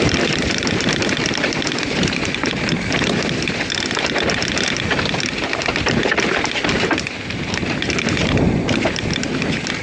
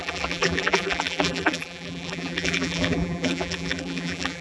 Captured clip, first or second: first